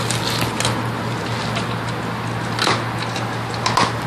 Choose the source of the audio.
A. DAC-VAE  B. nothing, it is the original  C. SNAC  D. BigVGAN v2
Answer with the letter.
B